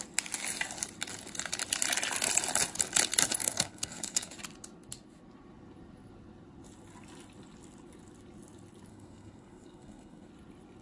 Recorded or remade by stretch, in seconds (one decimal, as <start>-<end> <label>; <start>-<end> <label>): 0.0-3.4 recorded; 3.4-4.3 remade; 4.3-8.9 recorded; 8.9-10.3 remade; 10.3-10.8 recorded